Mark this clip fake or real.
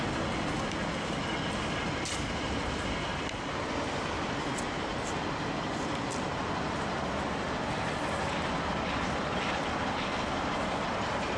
real